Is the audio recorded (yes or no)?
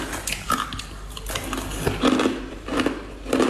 yes